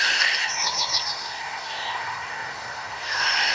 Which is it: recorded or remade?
remade